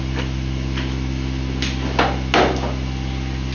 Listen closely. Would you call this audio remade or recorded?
recorded